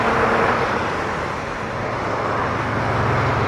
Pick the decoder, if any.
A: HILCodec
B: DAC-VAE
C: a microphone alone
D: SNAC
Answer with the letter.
C